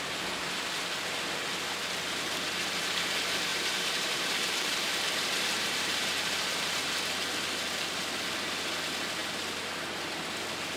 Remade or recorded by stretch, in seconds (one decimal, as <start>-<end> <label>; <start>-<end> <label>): 0.0-3.5 recorded; 3.5-7.0 remade; 7.0-10.8 recorded